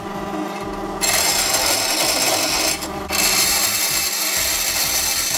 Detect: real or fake real